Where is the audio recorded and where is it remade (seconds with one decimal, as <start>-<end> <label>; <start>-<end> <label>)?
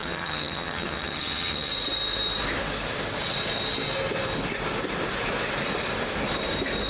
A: 0.0-1.7 remade; 1.7-6.9 recorded